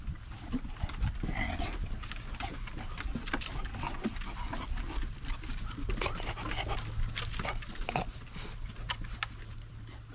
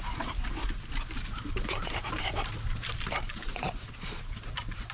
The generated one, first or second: second